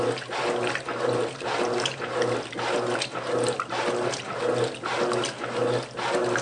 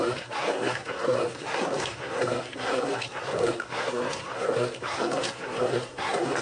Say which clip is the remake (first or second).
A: second